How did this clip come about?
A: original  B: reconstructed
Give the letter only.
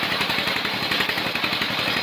A